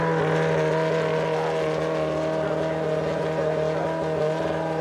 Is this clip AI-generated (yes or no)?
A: no